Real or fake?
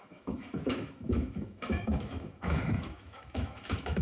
fake